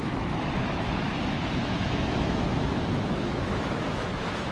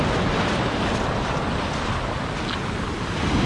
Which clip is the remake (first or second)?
first